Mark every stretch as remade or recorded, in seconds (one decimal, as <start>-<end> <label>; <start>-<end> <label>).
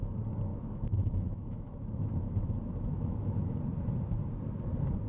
0.0-0.5 recorded; 0.5-3.6 remade; 3.6-5.1 recorded